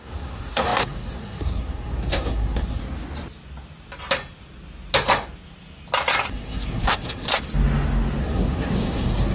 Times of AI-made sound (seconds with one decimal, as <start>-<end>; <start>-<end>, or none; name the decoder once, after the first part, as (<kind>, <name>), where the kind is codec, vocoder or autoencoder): 0.0-2.8 (codec, SNAC); 6.3-7.3; 8.2-9.3